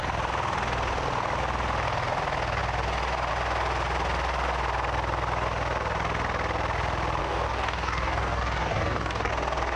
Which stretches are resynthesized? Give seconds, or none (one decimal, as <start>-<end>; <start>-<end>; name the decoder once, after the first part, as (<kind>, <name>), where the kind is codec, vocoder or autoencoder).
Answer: 7.2-9.3 (codec, DAC)